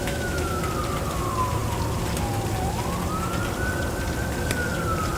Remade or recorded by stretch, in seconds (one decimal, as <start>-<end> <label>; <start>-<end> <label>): 0.0-0.6 remade; 0.6-5.2 recorded